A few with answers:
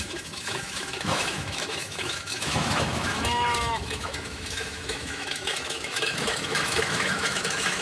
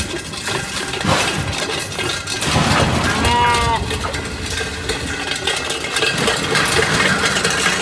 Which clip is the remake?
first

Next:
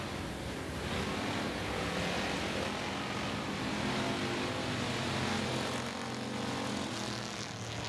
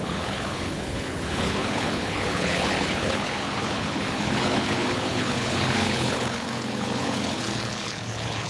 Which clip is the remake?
second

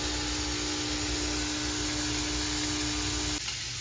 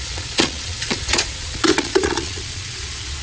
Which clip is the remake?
second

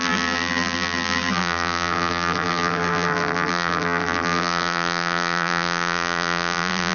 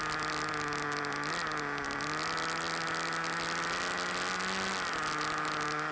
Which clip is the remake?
first